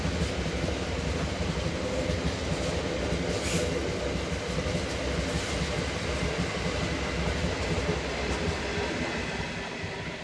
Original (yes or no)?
yes